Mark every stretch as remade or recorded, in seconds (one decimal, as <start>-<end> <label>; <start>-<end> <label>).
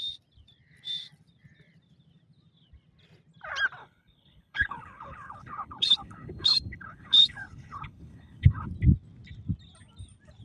0.0-3.8 recorded; 3.8-8.7 remade; 8.7-10.4 recorded